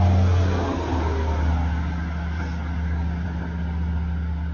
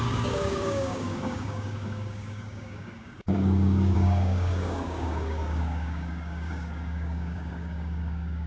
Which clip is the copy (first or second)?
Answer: second